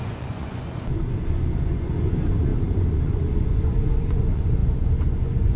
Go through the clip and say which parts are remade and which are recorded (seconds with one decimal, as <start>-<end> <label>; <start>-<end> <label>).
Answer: 0.0-5.6 remade